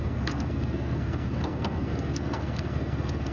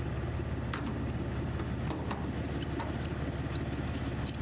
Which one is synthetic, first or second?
first